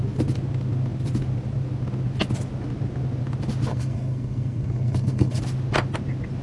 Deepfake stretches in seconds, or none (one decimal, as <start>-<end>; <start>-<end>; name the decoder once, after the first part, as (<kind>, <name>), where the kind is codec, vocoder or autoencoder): 3.7-5.4 (codec, SNAC)